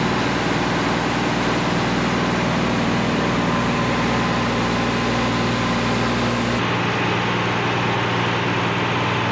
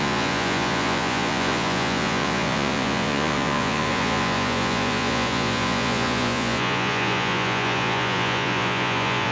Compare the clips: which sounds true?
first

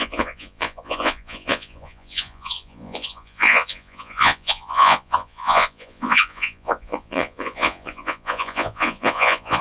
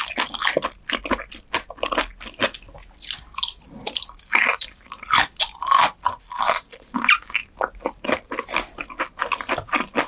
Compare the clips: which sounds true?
second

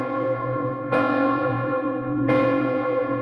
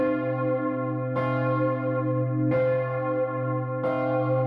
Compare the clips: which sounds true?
second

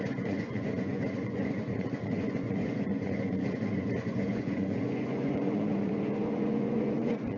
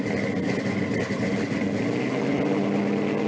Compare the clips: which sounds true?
second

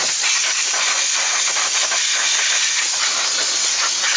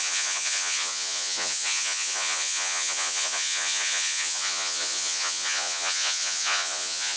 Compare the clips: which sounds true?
first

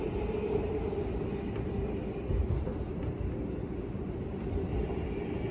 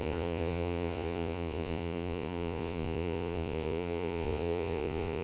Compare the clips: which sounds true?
first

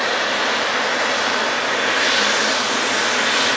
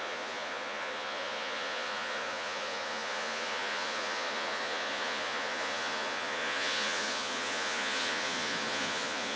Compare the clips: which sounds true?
first